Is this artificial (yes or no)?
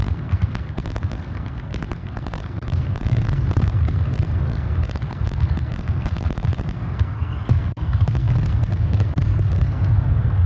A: yes